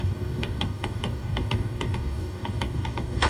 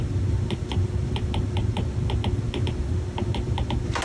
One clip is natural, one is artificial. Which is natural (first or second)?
second